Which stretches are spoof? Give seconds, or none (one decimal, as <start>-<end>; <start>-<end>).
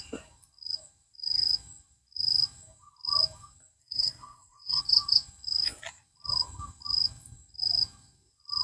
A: 3.8-4.8